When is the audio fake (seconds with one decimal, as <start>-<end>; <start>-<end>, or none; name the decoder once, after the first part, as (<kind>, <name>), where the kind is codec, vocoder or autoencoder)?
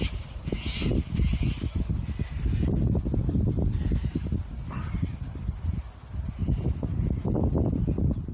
none